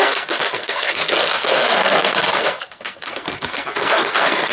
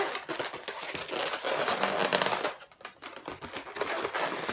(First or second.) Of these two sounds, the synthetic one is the first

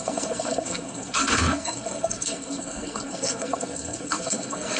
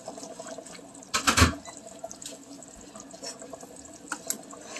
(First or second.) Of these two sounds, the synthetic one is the first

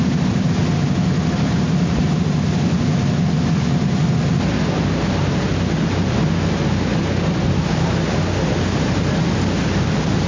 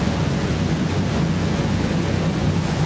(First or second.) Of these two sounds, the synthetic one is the second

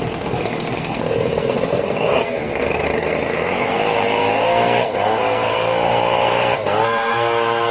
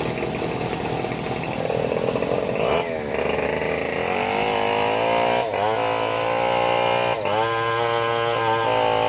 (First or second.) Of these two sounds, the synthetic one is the first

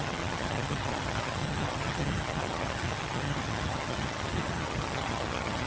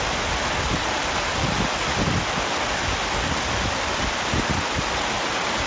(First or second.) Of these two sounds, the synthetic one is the first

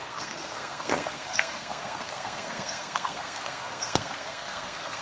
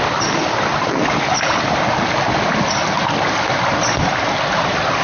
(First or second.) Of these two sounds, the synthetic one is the first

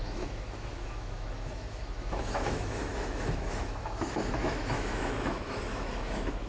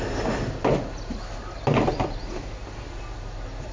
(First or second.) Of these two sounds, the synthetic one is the first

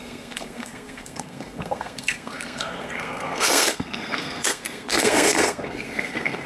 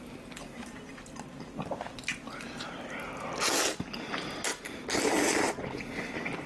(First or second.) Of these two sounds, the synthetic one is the first